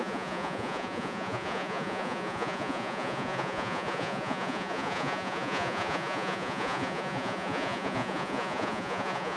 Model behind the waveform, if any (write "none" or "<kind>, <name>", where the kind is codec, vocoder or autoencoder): vocoder, Vocos